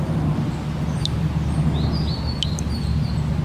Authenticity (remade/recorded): recorded